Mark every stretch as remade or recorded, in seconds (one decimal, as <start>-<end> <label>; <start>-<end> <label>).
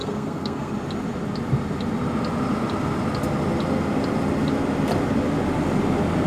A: 0.0-0.7 remade; 0.7-6.3 recorded